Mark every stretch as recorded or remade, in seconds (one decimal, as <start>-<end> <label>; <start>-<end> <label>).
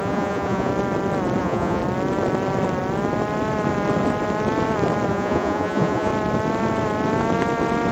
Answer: 0.0-0.7 remade; 0.7-1.4 recorded; 1.4-1.8 remade; 1.8-5.1 recorded; 5.1-6.1 remade; 6.1-7.9 recorded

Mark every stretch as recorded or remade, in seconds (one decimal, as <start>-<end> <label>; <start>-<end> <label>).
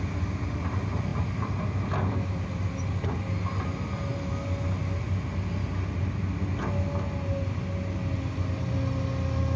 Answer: 0.0-9.6 recorded